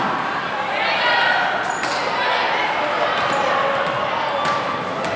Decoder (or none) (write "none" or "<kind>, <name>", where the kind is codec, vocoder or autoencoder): none